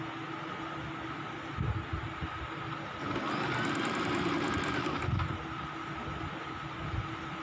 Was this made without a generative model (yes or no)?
yes